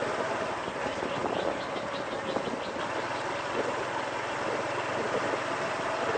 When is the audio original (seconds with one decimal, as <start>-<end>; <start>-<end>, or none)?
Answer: 0.0-6.2

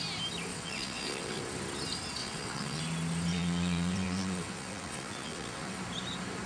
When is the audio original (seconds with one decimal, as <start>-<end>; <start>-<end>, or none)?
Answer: 0.0-0.5; 1.4-2.2; 2.8-3.3; 5.8-6.5

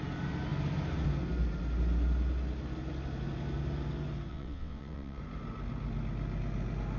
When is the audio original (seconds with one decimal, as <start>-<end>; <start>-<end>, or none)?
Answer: 0.0-4.3; 5.2-7.0

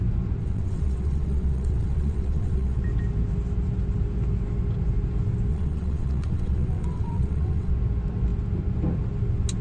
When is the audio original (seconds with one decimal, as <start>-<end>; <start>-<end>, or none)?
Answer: 0.0-0.4; 2.8-5.5; 7.7-9.6